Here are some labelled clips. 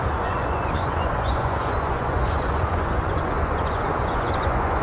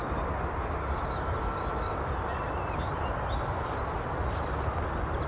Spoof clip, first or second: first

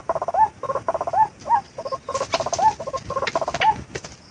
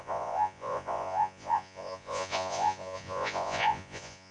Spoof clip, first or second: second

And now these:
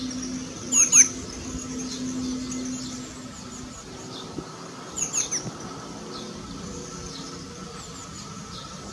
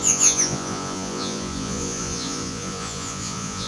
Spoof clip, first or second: second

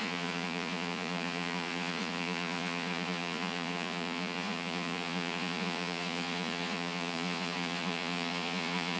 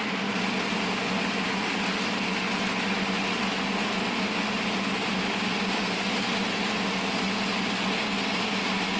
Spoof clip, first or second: first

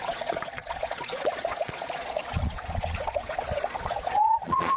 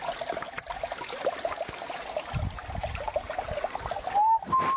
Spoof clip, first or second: first